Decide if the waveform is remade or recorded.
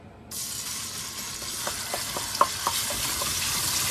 recorded